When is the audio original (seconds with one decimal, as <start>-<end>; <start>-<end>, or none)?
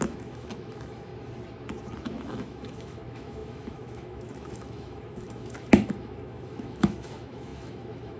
1.1-2.0